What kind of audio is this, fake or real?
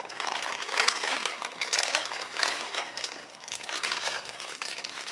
fake